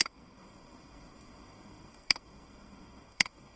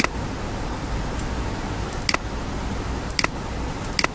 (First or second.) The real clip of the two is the second